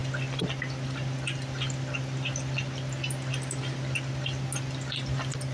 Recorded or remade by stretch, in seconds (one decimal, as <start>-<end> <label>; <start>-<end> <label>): 0.0-5.5 recorded